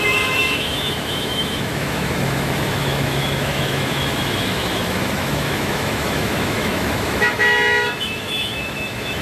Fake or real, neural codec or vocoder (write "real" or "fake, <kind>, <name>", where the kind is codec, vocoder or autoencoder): fake, autoencoder, DAC-VAE